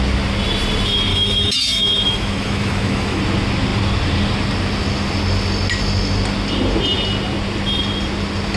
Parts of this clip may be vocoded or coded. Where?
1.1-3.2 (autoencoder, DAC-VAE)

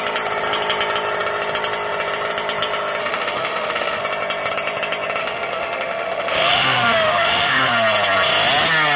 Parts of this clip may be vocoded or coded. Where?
3.0-4.0 (autoencoder, DAC-VAE); 5.2-7.7

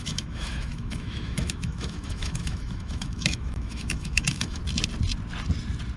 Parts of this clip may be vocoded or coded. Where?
0.0-4.6 (autoencoder, DAC-VAE)

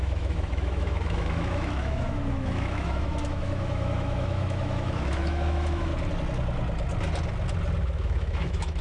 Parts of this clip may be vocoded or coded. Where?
0.0-5.9 (autoencoder, DAC-VAE); 7.8-8.8